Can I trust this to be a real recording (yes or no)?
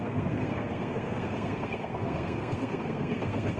no